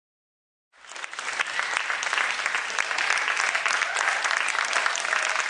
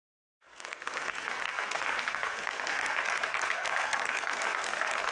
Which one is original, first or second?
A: first